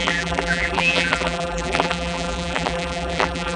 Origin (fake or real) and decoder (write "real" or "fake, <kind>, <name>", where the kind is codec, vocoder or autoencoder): fake, vocoder, BigVGAN v2